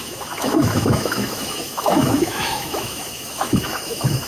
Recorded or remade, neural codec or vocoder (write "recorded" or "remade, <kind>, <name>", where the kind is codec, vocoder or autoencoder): remade, autoencoder, DAC-VAE